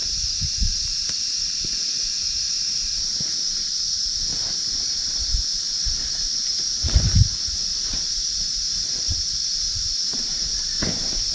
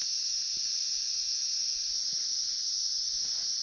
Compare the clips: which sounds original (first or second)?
second